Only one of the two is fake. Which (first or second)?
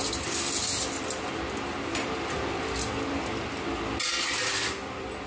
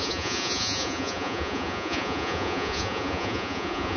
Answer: second